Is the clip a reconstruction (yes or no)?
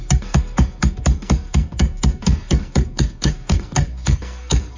yes